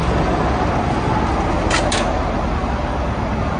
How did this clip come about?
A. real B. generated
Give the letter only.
A